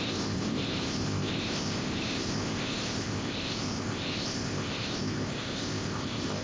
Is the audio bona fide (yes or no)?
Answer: no